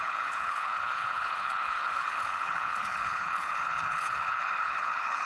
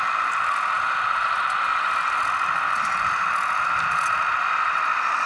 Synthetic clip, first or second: first